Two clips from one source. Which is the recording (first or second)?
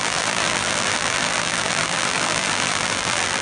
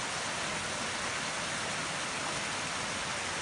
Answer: second